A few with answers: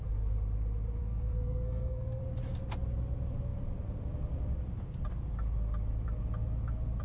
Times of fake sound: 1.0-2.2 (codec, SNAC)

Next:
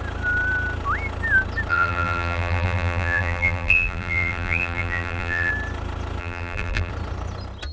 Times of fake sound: 1.7-5.5 (vocoder, BigVGAN v2); 6.2-6.9